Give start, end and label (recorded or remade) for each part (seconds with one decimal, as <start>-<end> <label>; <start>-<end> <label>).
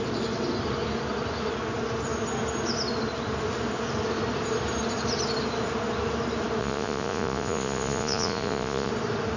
0.0-6.6 recorded; 6.6-8.9 remade; 8.9-9.4 recorded